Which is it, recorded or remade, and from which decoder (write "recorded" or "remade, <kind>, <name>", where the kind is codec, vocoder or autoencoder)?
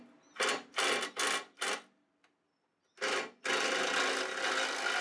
recorded